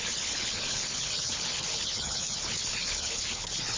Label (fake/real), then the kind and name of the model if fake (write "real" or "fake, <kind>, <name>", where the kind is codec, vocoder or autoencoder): fake, codec, HILCodec